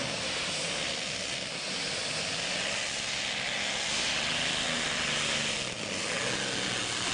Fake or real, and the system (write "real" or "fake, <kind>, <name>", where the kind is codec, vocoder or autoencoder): real